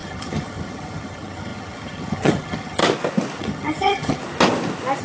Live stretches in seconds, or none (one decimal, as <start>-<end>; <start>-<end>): 2.8-3.4; 4.2-5.0